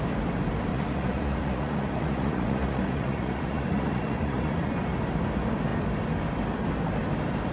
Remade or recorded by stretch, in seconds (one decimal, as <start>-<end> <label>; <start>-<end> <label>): 0.0-0.7 recorded; 0.7-4.7 remade; 4.7-7.5 recorded